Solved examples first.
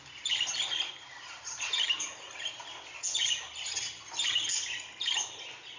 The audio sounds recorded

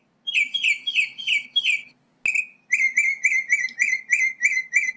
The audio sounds recorded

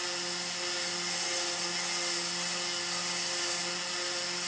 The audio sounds recorded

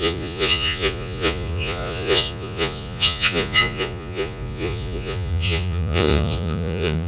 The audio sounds remade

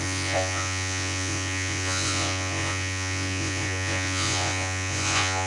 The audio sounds remade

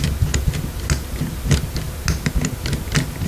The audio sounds recorded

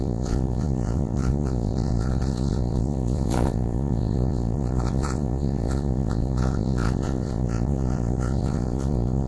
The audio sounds remade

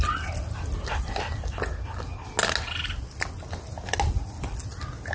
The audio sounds recorded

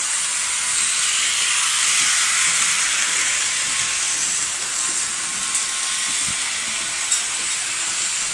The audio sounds recorded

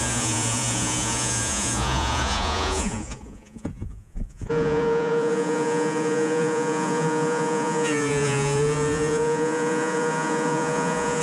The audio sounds remade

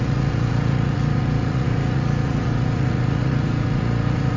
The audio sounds remade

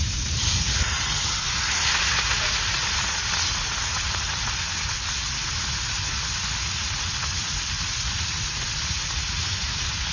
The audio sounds remade